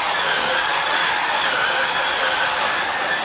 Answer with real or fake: real